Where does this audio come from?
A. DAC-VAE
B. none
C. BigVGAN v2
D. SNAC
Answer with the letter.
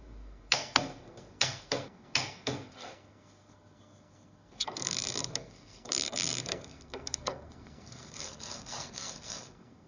D